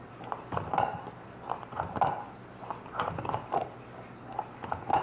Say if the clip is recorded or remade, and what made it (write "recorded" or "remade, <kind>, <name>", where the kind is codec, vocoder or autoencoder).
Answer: recorded